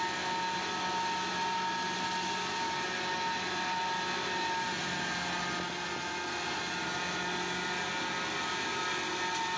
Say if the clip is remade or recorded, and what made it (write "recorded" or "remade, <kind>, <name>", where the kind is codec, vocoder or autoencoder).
recorded